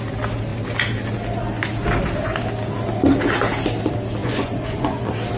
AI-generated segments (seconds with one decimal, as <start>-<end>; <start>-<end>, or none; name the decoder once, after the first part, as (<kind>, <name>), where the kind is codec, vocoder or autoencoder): 4.2-5.0 (vocoder, Vocos)

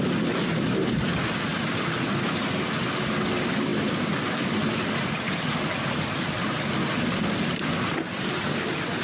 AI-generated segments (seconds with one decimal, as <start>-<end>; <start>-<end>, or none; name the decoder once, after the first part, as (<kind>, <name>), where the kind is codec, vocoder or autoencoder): 1.5-2.6 (vocoder, BigVGAN v2); 3.7-6.2